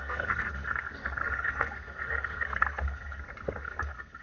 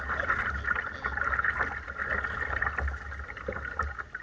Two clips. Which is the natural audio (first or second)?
second